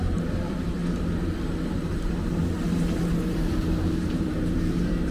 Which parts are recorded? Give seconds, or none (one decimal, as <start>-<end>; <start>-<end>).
0.8-3.3